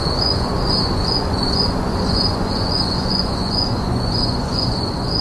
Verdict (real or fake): fake